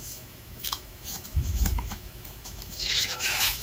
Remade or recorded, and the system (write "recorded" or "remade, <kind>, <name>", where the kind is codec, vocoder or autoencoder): remade, autoencoder, DAC-VAE